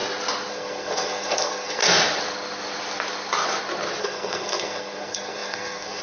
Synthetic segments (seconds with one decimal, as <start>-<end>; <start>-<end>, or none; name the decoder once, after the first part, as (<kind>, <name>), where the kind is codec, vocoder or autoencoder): 0.5-1.8 (codec, SNAC); 4.0-6.0